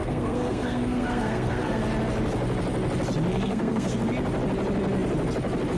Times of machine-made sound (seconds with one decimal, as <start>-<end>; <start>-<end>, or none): 0.0-1.8; 3.3-4.0